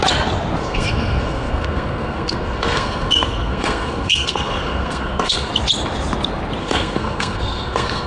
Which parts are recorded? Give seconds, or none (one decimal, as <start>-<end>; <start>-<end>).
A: 0.0-0.6; 5.5-6.6